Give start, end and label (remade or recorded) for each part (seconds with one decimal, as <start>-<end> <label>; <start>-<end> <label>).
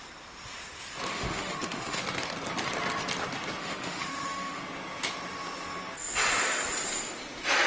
0.0-1.1 recorded; 1.1-2.0 remade; 2.0-3.6 recorded; 3.6-4.6 remade; 4.6-7.7 recorded